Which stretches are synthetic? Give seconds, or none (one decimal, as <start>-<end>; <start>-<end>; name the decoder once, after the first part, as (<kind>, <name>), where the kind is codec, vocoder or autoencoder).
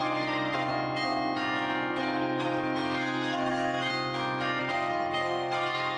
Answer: 0.0-0.7 (codec, SNAC); 2.0-3.9; 4.6-6.0